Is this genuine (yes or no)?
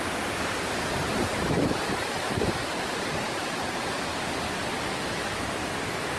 yes